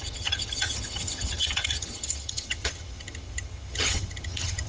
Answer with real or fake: fake